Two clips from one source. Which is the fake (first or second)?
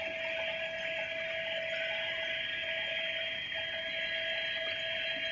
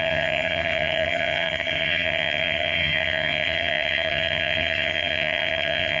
second